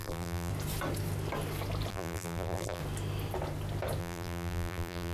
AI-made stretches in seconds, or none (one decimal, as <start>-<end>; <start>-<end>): 0.0-0.5; 1.9-2.8; 4.0-5.1